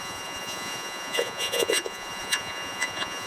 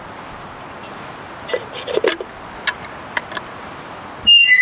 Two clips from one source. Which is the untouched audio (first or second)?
second